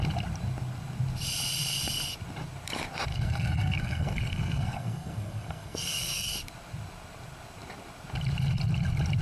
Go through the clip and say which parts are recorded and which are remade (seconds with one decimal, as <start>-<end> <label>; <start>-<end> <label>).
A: 0.0-3.1 recorded; 3.1-6.3 remade; 6.3-9.2 recorded